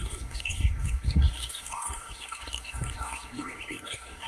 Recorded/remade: remade